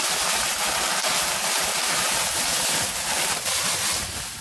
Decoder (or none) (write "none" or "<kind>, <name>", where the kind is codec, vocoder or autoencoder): none